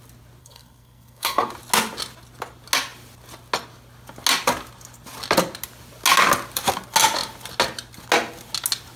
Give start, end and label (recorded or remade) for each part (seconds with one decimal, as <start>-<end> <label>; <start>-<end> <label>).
0.0-0.4 recorded; 0.4-1.5 remade; 1.5-9.0 recorded